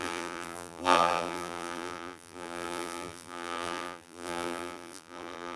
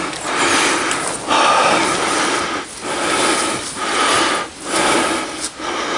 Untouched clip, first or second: second